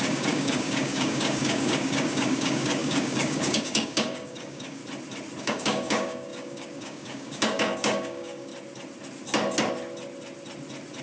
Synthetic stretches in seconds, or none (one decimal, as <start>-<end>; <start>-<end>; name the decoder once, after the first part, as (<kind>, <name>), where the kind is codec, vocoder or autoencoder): 0.0-4.8 (codec, DAC); 5.4-8.5